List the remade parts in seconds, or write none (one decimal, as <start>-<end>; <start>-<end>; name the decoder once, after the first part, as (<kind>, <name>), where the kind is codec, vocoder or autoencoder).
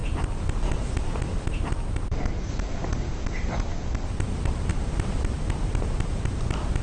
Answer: 0.0-6.8 (vocoder, BigVGAN v2)